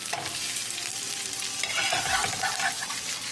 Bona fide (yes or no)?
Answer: yes